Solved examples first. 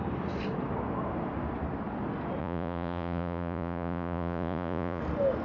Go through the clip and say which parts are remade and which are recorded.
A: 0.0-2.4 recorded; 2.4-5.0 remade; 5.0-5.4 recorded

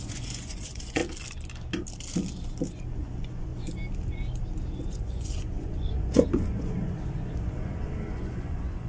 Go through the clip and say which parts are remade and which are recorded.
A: 0.0-1.0 remade; 1.0-2.9 recorded; 2.9-3.5 remade; 3.5-4.8 recorded; 4.8-8.9 remade

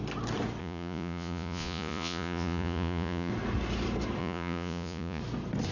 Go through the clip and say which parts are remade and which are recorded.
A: 0.0-0.6 recorded; 0.6-3.3 remade; 3.3-4.2 recorded; 4.2-5.2 remade; 5.2-5.7 recorded